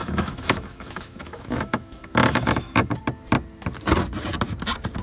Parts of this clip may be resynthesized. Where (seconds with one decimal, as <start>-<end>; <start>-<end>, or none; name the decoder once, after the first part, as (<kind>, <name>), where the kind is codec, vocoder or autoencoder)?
0.0-3.0 (autoencoder, DAC-VAE)